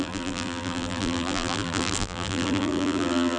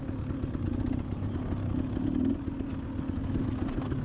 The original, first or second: second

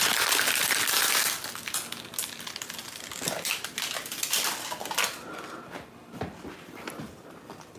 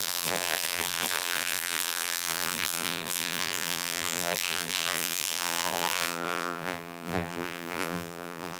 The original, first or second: first